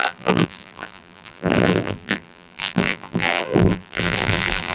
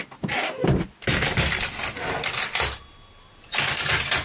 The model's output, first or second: first